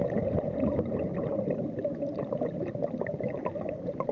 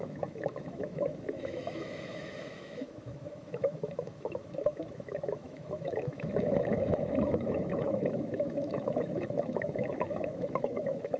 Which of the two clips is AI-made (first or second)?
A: second